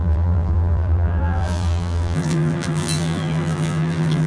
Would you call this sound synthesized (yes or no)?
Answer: yes